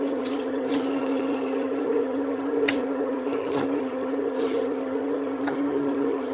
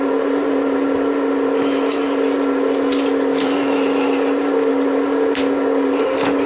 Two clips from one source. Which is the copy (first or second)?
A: first